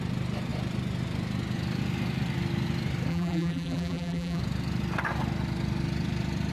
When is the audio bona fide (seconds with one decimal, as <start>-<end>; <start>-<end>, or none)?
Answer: 0.0-3.1; 4.4-6.5